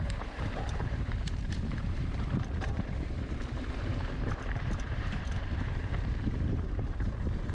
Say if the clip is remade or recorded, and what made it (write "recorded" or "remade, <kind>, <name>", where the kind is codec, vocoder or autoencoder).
remade, vocoder, BigVGAN v2